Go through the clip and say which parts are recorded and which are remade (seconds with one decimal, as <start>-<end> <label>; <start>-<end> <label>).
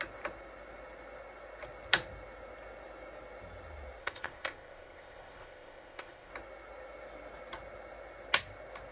0.0-4.0 recorded; 4.0-6.3 remade; 6.3-8.9 recorded